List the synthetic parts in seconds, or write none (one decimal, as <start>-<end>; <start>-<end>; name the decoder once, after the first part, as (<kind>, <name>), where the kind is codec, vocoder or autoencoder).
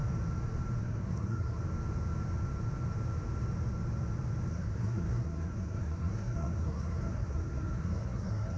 0.8-1.6 (codec, SNAC); 4.5-8.6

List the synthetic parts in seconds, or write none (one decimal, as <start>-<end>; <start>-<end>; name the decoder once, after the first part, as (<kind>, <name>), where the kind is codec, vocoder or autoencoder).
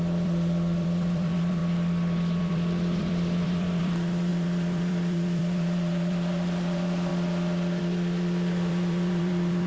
0.0-1.6 (vocoder, BigVGAN v2); 2.4-7.1; 7.8-9.7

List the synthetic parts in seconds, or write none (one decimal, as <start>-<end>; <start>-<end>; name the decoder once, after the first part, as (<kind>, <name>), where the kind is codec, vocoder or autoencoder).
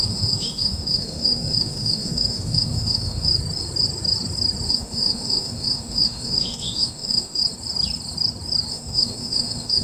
0.0-3.3 (autoencoder, DAC-VAE); 4.7-7.4; 8.7-9.8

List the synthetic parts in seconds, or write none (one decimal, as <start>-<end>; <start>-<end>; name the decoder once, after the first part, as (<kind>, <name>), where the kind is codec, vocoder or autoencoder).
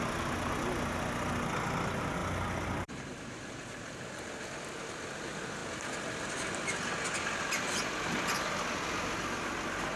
2.2-4.8 (vocoder, BigVGAN v2)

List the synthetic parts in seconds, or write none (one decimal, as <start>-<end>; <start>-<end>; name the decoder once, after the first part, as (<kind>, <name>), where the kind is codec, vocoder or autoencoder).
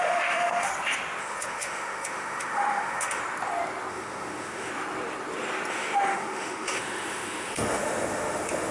0.0-0.7 (autoencoder, DAC-VAE); 1.2-3.2; 3.9-4.7; 5.7-8.7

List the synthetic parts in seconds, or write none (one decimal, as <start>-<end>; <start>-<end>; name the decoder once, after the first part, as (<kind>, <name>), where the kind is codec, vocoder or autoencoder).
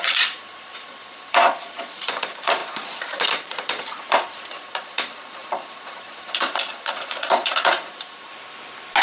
0.0-8.3 (vocoder, Vocos)